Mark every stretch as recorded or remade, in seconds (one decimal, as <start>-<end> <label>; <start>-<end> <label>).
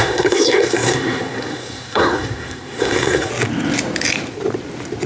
0.0-3.3 remade; 3.3-5.1 recorded